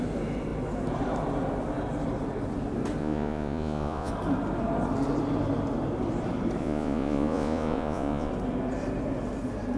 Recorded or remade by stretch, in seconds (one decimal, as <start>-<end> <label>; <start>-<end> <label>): 0.0-3.0 recorded; 3.0-4.1 remade; 4.1-6.6 recorded; 6.6-8.3 remade; 8.3-9.8 recorded